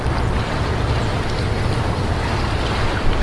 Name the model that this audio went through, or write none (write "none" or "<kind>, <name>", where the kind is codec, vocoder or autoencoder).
none